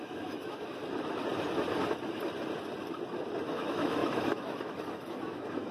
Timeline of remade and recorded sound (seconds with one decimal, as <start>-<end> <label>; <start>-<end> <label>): 0.0-0.8 remade; 0.8-3.5 recorded; 3.5-5.7 remade